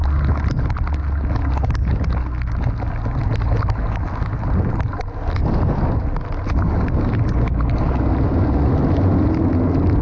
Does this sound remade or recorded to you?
recorded